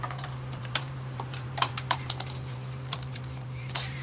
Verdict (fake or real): fake